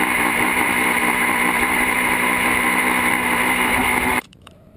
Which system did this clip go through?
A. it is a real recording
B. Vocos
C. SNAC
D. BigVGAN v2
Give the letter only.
D